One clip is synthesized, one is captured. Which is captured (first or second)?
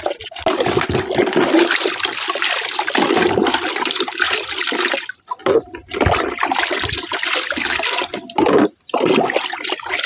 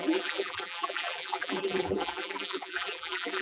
first